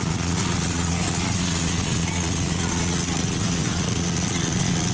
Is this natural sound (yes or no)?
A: no